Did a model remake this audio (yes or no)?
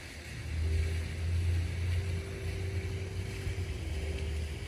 no